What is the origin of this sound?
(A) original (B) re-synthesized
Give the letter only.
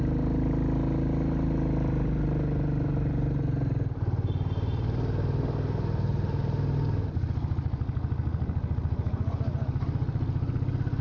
A